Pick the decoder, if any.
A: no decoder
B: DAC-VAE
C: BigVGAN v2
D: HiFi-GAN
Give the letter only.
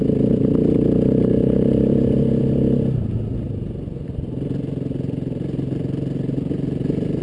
A